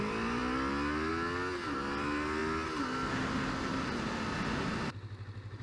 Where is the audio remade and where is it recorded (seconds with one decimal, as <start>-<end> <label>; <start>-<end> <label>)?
0.0-5.6 recorded